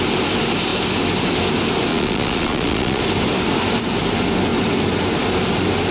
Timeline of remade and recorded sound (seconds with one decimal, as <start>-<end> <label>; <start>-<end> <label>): 0.0-1.9 recorded; 1.9-3.0 remade; 3.0-5.9 recorded